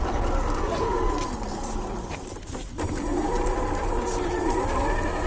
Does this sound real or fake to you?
real